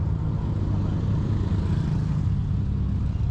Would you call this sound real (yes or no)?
yes